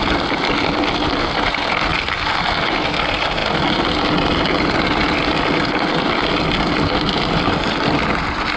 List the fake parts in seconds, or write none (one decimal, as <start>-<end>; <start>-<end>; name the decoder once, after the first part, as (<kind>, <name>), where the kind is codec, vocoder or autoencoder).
none